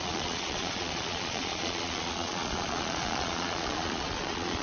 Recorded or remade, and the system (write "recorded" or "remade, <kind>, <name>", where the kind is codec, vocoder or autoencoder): remade, vocoder, Vocos